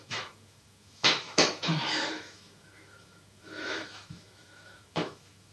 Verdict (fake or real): fake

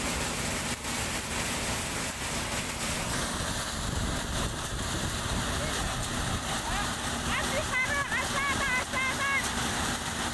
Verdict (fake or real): real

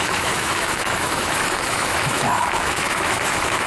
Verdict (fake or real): fake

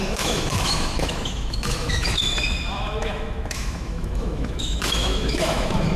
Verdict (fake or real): fake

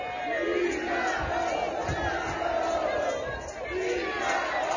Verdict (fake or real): real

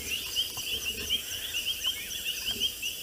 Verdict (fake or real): real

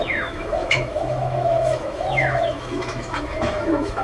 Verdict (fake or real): fake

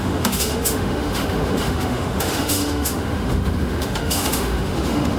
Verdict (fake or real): fake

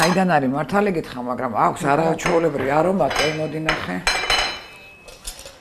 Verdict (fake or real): real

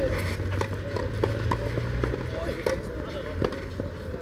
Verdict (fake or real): real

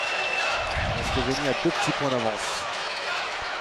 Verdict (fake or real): fake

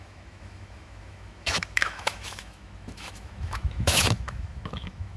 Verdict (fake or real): fake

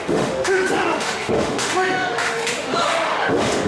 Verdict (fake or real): fake